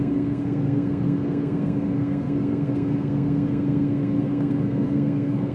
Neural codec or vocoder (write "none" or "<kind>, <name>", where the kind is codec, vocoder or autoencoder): codec, SNAC